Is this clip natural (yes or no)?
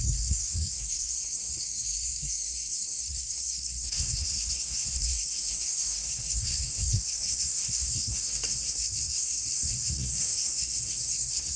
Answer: no